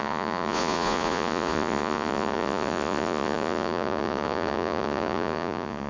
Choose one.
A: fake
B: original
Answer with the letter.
A